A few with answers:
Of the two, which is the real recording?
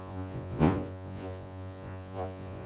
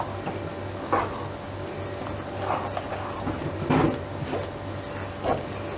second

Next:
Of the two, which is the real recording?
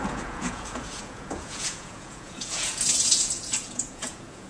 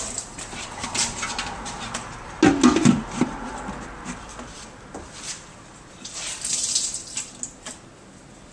second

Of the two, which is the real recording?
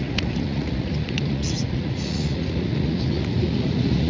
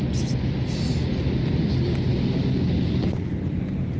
second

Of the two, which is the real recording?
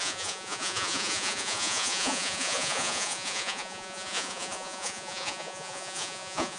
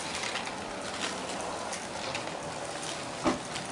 second